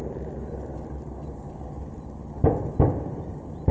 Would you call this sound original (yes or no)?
yes